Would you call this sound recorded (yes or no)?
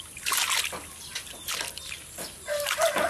yes